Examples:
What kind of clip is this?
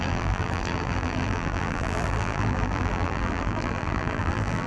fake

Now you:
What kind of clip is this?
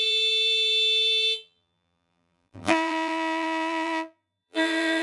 fake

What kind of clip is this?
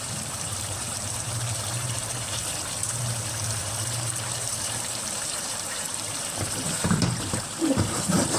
fake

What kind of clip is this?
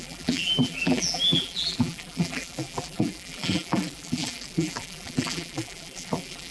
fake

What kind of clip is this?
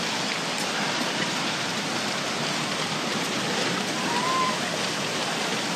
real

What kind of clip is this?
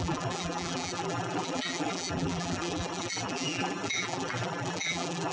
fake